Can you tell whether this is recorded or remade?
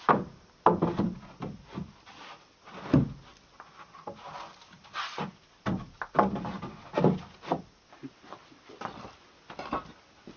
recorded